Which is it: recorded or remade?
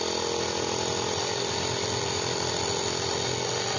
recorded